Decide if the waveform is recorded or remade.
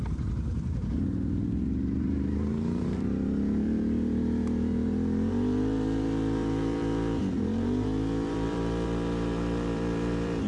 remade